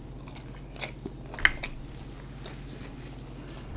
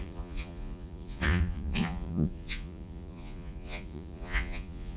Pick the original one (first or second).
first